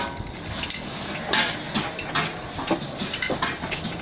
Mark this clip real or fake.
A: real